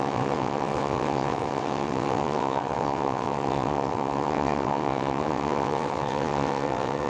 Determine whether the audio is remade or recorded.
remade